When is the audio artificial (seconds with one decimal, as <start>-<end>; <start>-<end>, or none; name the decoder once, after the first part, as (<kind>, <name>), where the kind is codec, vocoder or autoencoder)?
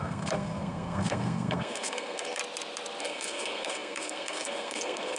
0.0-2.4 (codec, SNAC); 3.0-5.2